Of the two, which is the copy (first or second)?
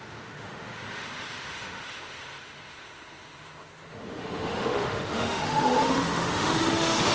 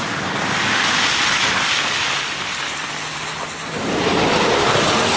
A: first